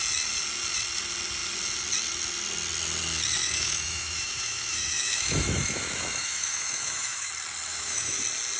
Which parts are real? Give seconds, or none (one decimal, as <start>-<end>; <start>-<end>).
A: 0.0-3.4; 7.3-7.7; 8.2-8.6